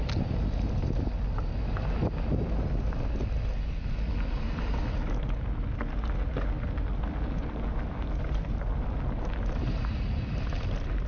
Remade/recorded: recorded